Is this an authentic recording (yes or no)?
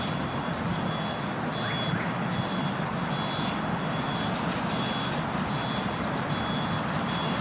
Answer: yes